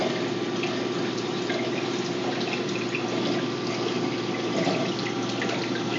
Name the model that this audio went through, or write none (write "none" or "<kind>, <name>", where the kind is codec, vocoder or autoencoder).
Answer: none